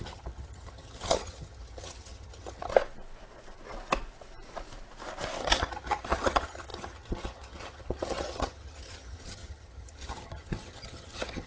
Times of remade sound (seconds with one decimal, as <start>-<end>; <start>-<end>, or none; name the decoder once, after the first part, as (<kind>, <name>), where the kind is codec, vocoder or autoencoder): 0.0-2.7 (vocoder, HiFi-GAN); 5.4-11.5